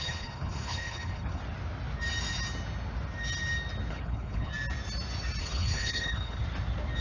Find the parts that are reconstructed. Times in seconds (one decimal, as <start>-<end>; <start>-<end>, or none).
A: 0.0-1.4; 3.9-4.5; 5.4-6.4